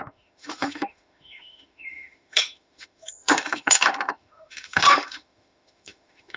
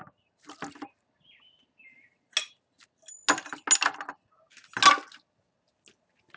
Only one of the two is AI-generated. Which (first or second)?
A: first